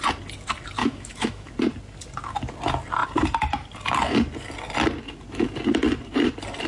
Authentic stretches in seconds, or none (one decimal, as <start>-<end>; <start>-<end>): 0.0-0.8; 1.5-6.7